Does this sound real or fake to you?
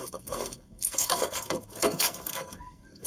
fake